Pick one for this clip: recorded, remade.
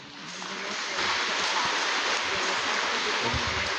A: recorded